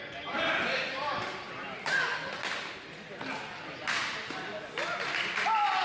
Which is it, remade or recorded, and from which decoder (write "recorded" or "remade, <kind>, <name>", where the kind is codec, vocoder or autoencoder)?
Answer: remade, vocoder, BigVGAN v2